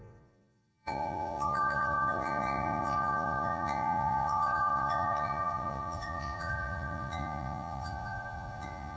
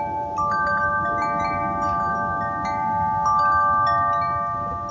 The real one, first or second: second